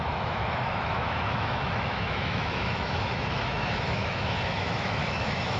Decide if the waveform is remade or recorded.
remade